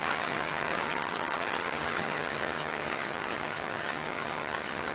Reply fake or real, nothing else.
fake